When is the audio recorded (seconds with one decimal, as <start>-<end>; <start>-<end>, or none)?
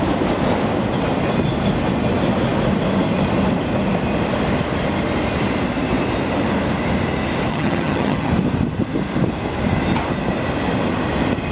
0.0-7.5; 8.3-11.5